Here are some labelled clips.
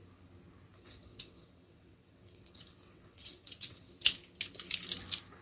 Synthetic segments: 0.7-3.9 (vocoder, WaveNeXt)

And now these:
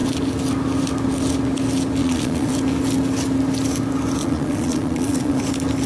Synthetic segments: 2.0-2.5 (vocoder, Vocos); 4.2-5.4

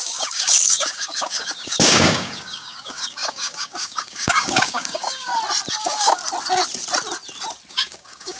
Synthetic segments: 0.0-5.3 (codec, DAC); 5.8-6.2; 7.7-8.4

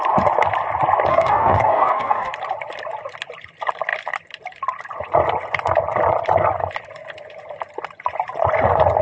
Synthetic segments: 1.1-2.3 (codec, DAC)

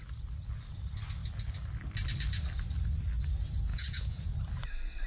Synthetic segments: 3.7-4.3 (vocoder, Vocos)